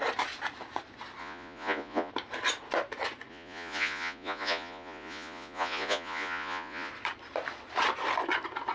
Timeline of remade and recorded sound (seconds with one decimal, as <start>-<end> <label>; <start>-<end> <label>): 0.0-1.2 recorded; 1.2-2.1 remade; 2.1-3.3 recorded; 3.3-6.9 remade; 6.9-8.7 recorded